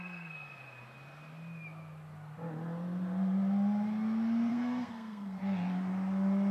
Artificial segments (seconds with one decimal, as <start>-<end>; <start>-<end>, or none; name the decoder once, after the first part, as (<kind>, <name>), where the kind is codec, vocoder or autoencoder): 0.0-0.6 (codec, SNAC); 4.5-5.4